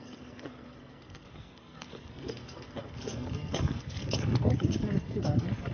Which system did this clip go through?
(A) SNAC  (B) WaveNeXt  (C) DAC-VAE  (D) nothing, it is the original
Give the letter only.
A